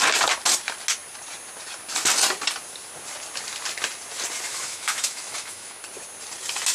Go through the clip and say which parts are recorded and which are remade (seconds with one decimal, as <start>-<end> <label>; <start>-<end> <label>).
0.0-4.5 recorded; 4.5-5.8 remade; 5.8-6.7 recorded